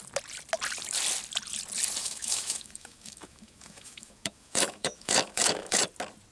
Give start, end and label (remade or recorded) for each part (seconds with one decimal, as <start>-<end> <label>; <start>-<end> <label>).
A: 0.0-2.0 recorded; 2.0-5.8 remade; 5.8-6.3 recorded